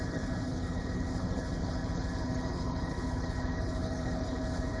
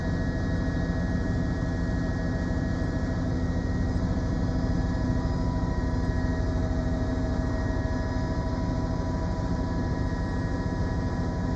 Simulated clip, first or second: first